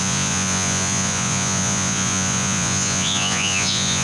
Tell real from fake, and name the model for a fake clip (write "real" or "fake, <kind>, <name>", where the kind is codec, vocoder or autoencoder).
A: fake, vocoder, Vocos